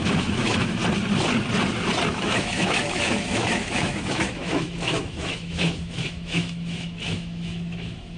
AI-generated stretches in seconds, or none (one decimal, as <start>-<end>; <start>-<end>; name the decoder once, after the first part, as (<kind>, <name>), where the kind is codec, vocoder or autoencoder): 0.0-0.8 (autoencoder, DAC-VAE); 2.1-8.2